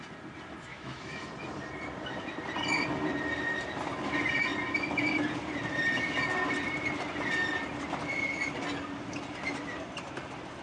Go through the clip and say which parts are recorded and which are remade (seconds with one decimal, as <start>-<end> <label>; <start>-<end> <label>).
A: 0.0-0.7 recorded; 0.7-1.3 remade; 1.3-10.6 recorded